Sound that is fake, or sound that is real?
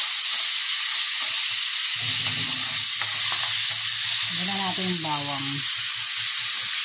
real